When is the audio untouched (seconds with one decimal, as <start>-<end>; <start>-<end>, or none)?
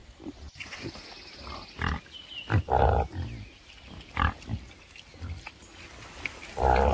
1.5-6.9